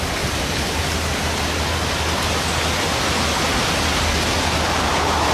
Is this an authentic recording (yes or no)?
yes